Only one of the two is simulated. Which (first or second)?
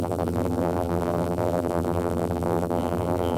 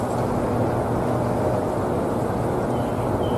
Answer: first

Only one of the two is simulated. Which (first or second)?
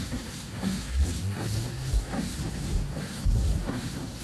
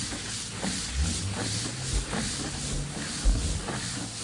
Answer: first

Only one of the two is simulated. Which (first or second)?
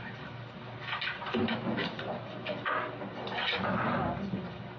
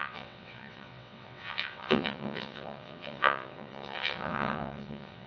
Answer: second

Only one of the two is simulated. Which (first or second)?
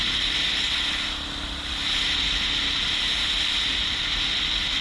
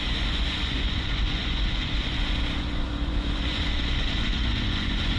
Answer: second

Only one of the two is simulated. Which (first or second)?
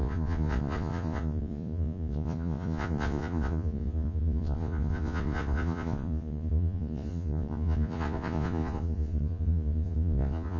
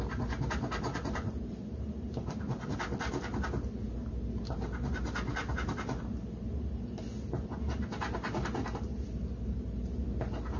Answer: first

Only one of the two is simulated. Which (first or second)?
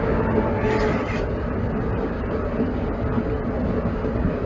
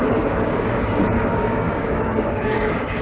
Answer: second